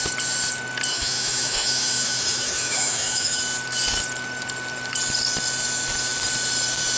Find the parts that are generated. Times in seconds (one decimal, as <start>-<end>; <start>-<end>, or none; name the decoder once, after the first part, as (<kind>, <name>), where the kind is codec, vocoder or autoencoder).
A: 0.9-3.4 (autoencoder, DAC-VAE)